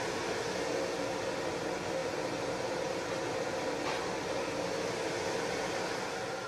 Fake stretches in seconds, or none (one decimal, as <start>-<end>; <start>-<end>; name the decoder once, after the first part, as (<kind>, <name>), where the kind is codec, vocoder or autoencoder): 2.0-5.9 (vocoder, BigVGAN v2)